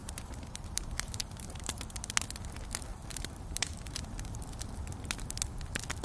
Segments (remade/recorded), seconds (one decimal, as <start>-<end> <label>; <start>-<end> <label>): 0.0-1.8 remade; 1.8-2.9 recorded; 2.9-4.4 remade; 4.4-6.0 recorded